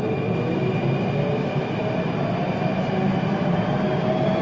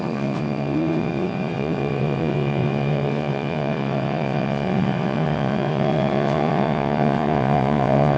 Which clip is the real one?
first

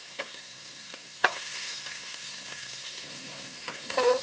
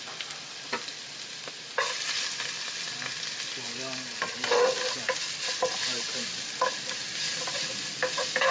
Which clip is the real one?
second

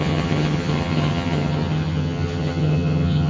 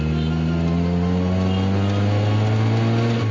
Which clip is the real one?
second